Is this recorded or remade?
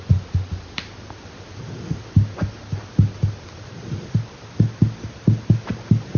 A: recorded